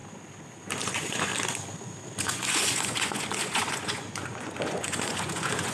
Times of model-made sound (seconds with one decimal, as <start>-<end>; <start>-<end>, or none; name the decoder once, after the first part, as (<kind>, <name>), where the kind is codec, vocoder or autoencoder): 0.8-1.3 (vocoder, Vocos); 2.2-5.7